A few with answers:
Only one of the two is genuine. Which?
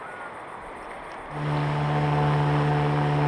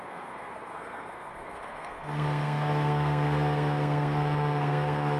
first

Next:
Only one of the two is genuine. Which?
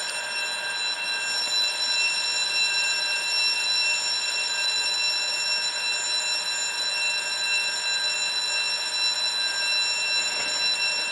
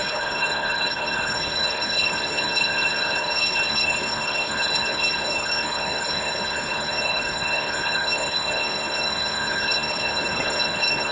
first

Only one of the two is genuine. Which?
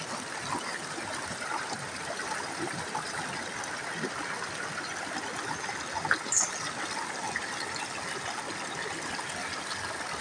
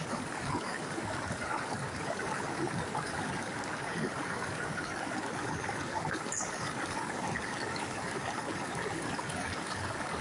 first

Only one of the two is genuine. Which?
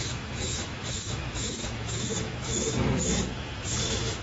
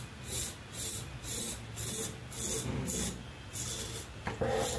second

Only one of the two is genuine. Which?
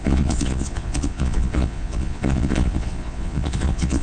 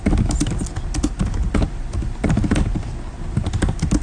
second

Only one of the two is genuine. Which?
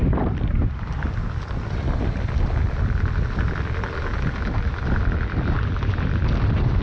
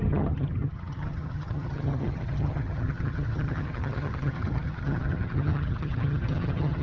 first